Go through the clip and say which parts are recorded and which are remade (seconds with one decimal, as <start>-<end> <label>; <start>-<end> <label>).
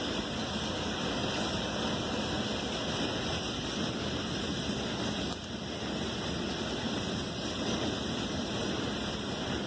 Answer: 0.0-9.7 recorded